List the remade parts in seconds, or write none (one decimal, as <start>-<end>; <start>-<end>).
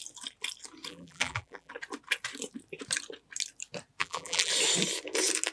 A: 0.9-1.7; 4.0-4.5